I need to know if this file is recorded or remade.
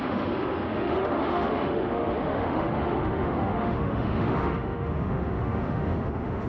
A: remade